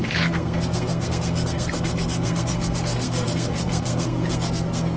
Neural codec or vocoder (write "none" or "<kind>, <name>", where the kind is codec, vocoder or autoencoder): codec, SNAC